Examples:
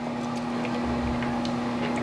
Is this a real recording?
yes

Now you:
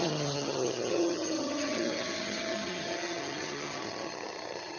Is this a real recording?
no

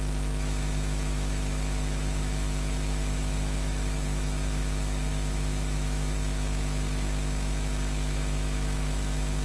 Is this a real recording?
no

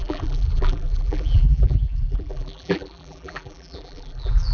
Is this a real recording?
no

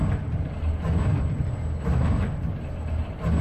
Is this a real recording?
yes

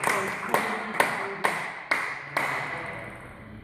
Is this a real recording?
yes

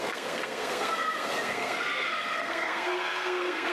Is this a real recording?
no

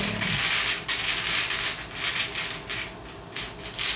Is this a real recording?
yes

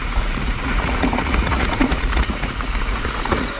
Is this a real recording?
no